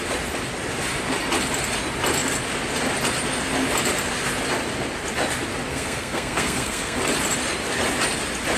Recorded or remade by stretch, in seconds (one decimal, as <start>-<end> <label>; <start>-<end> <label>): 0.0-5.7 recorded; 5.7-7.0 remade; 7.0-8.6 recorded